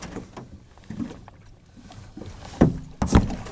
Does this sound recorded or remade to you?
recorded